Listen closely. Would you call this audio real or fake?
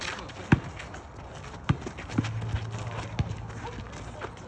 real